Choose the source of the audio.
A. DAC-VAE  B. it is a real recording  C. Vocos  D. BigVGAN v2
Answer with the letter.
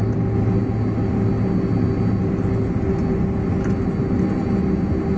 B